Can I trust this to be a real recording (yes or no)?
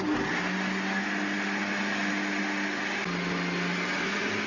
yes